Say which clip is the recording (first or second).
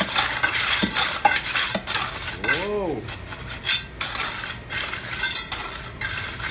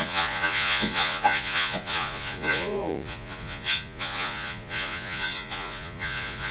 first